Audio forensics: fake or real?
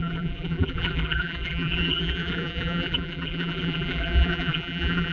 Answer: fake